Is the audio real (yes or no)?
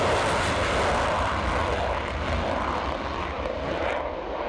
yes